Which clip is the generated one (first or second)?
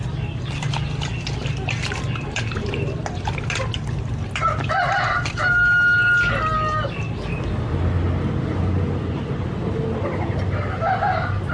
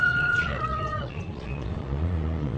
second